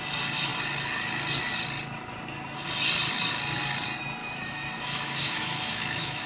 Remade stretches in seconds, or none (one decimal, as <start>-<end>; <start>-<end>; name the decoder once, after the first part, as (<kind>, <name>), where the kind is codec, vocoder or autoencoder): 4.2-6.3 (autoencoder, DAC-VAE)

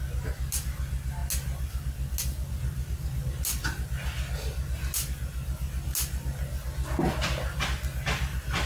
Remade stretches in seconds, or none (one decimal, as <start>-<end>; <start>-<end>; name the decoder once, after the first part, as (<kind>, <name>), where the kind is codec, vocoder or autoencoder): none

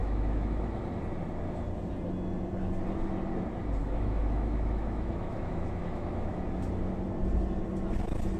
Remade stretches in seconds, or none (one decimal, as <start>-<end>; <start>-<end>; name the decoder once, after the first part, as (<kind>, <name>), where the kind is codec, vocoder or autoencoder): 0.0-0.8 (autoencoder, DAC-VAE); 3.8-6.4

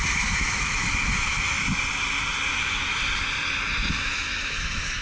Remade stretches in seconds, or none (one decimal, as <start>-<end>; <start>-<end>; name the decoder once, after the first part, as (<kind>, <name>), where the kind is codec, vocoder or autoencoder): 0.0-1.6 (autoencoder, DAC-VAE); 2.5-2.9; 3.9-5.0

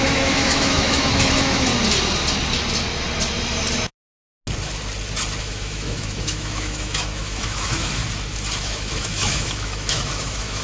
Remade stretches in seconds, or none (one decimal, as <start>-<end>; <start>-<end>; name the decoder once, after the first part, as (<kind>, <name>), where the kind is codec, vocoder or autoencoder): 0.0-1.7 (autoencoder, DAC-VAE); 5.4-8.0; 8.6-10.6